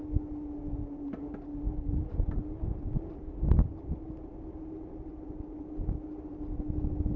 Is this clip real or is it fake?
real